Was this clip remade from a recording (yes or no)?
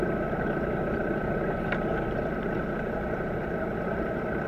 yes